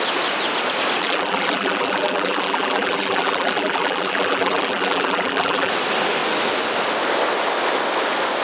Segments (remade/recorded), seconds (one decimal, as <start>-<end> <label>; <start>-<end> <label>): 0.0-1.0 recorded; 1.0-5.7 remade; 5.7-8.4 recorded